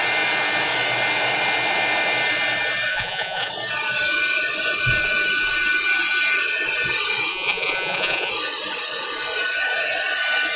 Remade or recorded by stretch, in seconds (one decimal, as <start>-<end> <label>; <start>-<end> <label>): 0.0-2.9 recorded; 2.9-3.5 remade; 3.5-7.3 recorded; 7.3-8.3 remade; 8.3-10.6 recorded